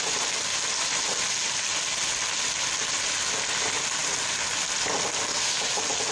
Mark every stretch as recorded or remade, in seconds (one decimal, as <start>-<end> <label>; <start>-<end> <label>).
0.0-6.1 recorded